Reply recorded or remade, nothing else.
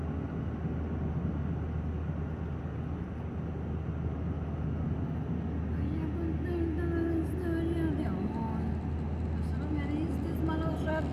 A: recorded